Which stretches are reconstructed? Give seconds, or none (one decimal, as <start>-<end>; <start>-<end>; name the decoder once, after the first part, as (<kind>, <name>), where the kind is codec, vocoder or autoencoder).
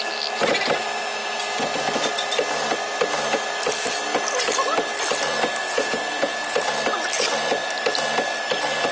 5.6-6.7 (vocoder, Vocos)